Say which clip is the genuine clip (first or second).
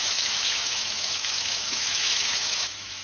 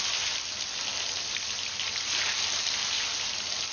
second